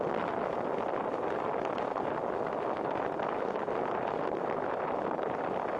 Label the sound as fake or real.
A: real